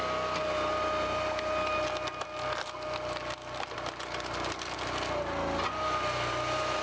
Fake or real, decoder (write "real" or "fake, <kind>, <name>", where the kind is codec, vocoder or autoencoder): real